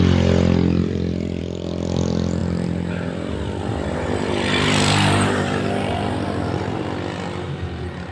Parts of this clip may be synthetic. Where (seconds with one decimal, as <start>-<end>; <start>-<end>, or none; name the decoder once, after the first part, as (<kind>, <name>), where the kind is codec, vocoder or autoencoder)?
0.8-1.4 (vocoder, BigVGAN v2); 3.7-6.8

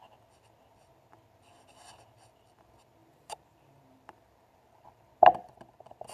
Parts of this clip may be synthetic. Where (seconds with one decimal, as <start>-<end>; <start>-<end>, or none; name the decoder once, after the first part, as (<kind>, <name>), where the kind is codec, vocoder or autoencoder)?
3.0-6.1 (vocoder, BigVGAN v2)

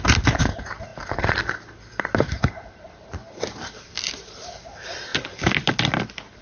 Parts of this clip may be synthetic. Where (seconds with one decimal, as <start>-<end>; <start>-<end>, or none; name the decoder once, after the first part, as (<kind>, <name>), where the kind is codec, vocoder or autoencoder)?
0.0-6.4 (vocoder, BigVGAN v2)